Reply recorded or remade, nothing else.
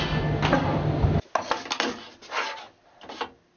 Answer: recorded